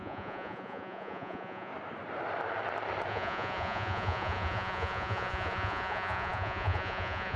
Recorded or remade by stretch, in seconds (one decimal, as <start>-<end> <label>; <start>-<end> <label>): 0.0-1.7 remade; 1.7-3.1 recorded; 3.1-7.4 remade